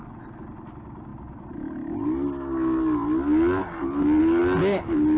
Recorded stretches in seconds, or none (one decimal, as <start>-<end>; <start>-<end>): 0.0-5.2